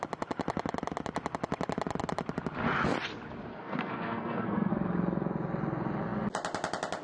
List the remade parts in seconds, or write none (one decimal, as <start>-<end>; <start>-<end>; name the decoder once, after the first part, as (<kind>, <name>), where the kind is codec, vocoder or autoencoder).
3.5-4.7 (codec, SNAC)

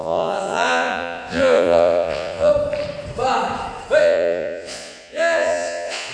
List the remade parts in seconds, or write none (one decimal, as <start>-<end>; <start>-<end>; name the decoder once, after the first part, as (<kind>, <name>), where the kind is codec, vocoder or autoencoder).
0.0-2.5 (vocoder, Vocos); 4.0-6.1

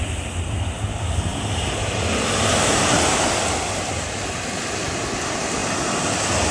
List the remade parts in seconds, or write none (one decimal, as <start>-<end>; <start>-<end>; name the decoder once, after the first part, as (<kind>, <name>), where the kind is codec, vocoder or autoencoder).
none

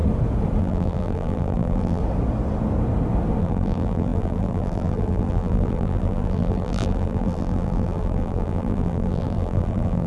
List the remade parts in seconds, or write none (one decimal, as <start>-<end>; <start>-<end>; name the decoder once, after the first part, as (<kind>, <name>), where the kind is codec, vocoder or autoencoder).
0.6-2.0 (vocoder, BigVGAN v2); 3.4-10.1

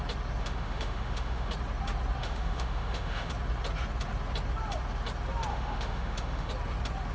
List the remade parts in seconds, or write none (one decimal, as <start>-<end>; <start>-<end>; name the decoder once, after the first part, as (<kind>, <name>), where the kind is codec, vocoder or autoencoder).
0.4-1.5 (autoencoder, DAC-VAE); 2.2-3.3; 5.5-6.5